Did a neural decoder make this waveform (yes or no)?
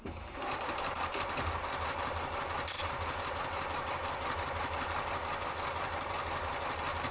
yes